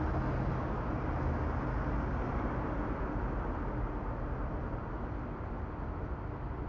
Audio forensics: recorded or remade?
recorded